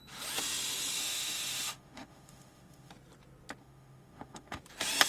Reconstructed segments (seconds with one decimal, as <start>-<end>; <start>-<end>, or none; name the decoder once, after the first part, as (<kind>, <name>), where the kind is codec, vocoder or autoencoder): 1.0-2.9 (autoencoder, DAC-VAE); 3.6-4.6